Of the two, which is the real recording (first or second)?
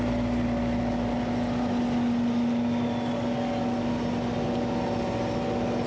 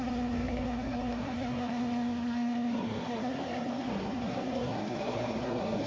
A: first